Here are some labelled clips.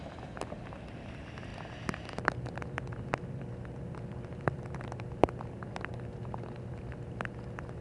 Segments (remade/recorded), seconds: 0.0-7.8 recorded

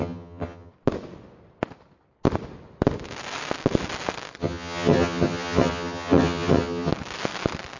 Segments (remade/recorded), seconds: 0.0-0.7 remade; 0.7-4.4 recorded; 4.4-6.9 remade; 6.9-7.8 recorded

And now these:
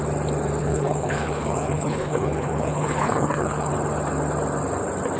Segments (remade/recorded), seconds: 0.0-0.6 recorded; 0.6-3.7 remade; 3.7-5.2 recorded